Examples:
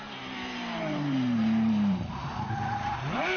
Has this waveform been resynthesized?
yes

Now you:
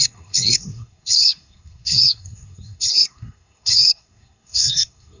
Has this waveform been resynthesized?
yes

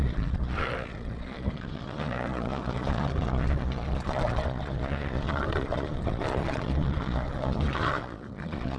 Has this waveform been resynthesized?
yes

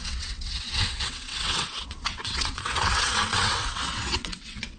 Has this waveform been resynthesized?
yes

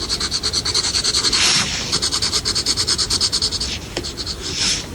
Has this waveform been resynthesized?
no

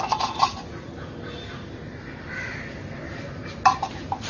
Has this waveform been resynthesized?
no